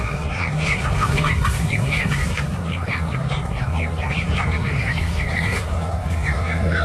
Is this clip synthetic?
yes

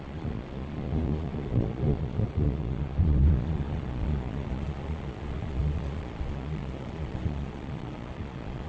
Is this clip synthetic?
yes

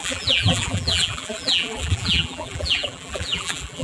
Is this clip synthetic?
yes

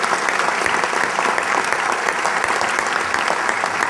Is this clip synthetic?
no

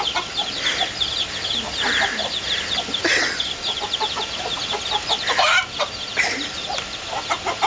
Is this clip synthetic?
no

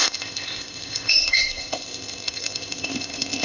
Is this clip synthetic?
yes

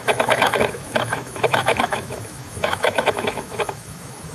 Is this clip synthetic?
yes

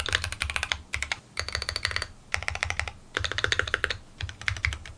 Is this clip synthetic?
no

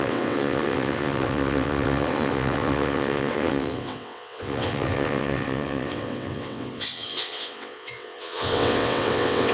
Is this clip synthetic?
yes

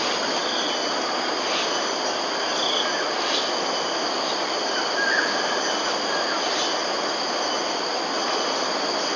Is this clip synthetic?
no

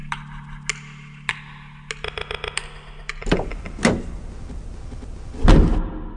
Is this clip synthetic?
no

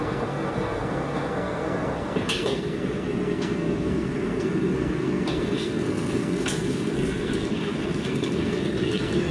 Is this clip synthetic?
yes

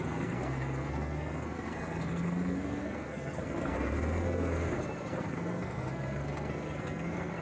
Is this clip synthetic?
yes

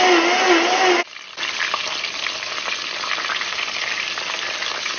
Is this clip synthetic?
no